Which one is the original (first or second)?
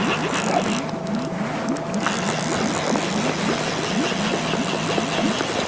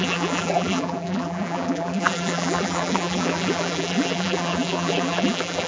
first